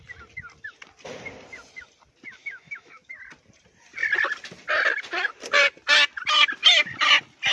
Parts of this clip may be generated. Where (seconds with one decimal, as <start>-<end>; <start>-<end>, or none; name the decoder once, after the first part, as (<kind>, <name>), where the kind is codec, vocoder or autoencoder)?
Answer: 2.4-3.1 (autoencoder, DAC-VAE)